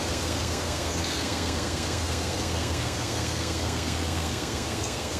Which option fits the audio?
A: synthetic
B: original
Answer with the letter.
A